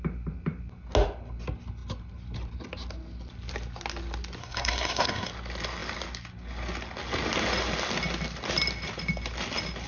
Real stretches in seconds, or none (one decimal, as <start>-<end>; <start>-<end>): 0.0-4.4; 5.3-9.9